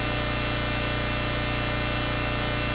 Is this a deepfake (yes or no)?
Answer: no